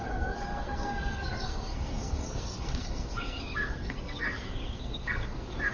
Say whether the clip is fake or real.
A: fake